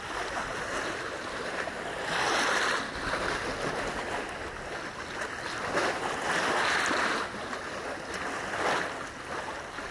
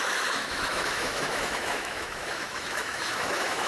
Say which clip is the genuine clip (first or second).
first